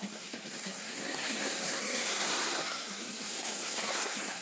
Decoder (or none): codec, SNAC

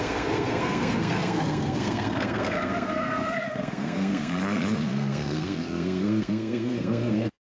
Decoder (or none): codec, SNAC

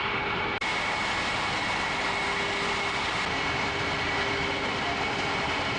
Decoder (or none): none